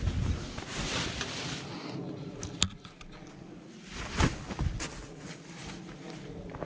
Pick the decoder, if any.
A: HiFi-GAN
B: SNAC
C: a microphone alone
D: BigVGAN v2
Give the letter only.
C